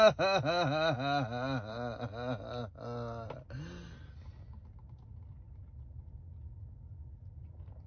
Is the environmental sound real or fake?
real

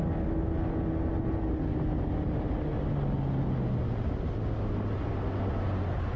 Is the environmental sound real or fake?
real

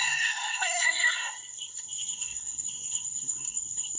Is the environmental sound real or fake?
fake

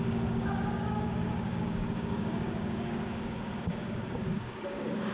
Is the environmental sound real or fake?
fake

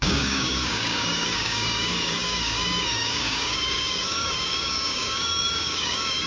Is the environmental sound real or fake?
fake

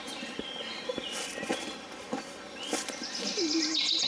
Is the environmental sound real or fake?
real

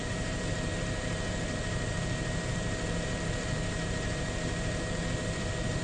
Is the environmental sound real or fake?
fake